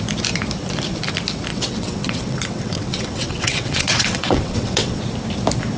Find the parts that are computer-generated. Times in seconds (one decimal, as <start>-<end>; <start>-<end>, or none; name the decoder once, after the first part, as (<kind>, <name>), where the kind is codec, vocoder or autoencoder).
1.5-5.0 (vocoder, WaveNeXt)